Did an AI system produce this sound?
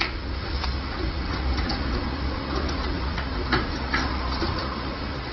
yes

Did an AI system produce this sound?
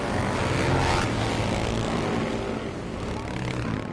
no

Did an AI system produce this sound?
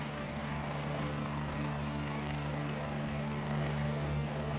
yes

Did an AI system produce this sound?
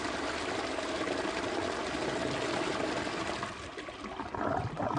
no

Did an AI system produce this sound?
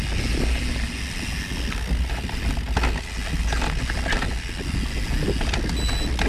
no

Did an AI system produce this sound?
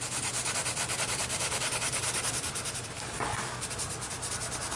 yes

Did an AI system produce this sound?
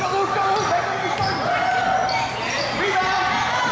no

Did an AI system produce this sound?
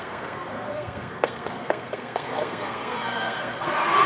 yes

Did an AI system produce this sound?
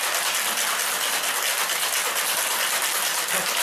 no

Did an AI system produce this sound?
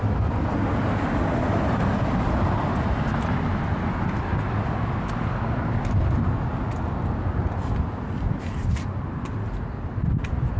no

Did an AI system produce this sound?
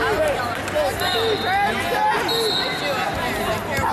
no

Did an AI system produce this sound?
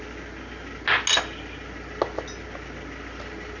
no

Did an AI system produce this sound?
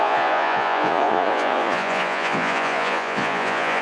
yes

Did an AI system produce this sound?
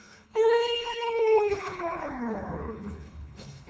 yes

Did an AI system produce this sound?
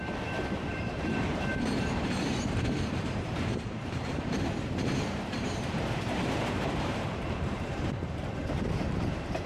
yes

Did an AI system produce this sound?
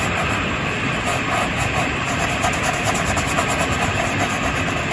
yes